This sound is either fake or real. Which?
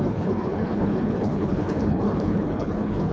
fake